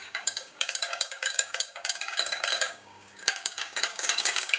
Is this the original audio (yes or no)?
no